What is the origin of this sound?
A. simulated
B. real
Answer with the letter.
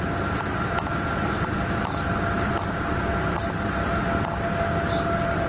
B